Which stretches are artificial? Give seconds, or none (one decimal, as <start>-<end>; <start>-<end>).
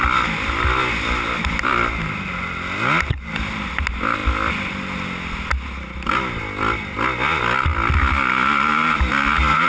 none